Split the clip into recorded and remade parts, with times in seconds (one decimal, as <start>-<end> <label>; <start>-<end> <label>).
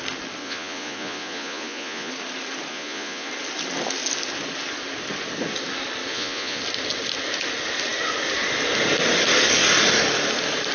0.0-0.4 recorded; 0.4-2.1 remade; 2.1-2.7 recorded; 2.7-3.3 remade; 3.3-6.1 recorded; 6.1-6.6 remade; 6.6-10.7 recorded